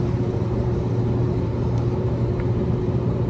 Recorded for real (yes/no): no